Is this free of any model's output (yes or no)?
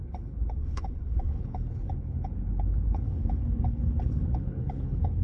no